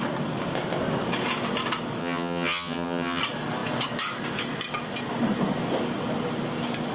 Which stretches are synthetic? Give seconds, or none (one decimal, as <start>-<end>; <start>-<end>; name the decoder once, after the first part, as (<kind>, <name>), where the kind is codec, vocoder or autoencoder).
2.0-3.2 (vocoder, HiFi-GAN)